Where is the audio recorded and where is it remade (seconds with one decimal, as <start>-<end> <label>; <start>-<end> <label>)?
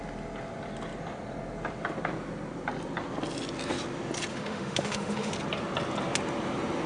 0.0-4.3 recorded; 4.3-5.3 remade; 5.3-6.9 recorded